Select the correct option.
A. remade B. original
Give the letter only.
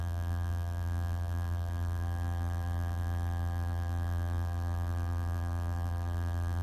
A